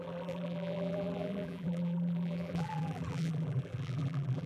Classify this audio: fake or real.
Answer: fake